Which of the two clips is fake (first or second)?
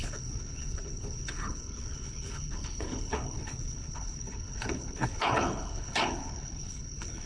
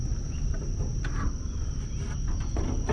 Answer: first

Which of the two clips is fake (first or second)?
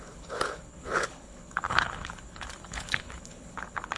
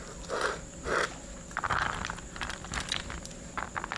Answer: first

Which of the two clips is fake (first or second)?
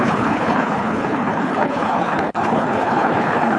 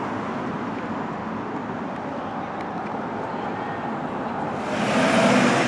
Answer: first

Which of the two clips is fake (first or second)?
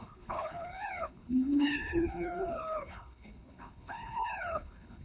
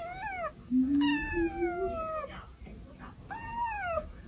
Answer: first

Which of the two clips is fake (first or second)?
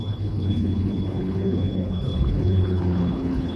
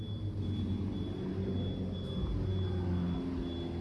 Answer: first